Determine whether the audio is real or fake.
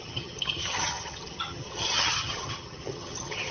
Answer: fake